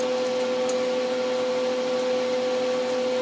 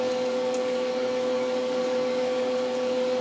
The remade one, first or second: second